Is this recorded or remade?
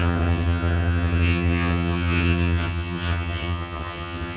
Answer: remade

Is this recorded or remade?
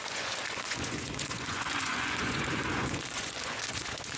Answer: remade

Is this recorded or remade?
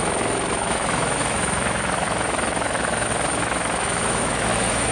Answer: remade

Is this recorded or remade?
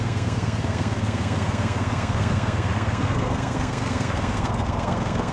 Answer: remade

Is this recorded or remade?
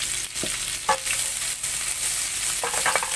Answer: recorded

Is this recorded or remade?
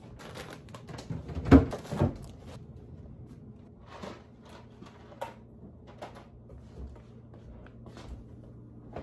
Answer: recorded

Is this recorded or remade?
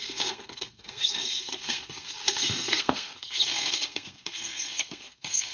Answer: remade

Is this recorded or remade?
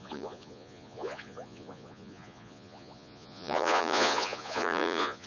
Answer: remade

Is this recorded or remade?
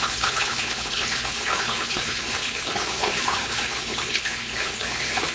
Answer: remade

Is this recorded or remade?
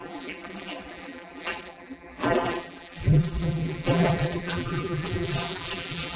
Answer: remade